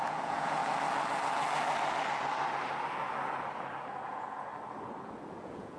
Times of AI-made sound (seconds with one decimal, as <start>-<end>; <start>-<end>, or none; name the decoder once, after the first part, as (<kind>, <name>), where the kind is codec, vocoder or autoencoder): 0.0-0.6 (vocoder, Vocos); 4.1-4.5; 5.3-5.8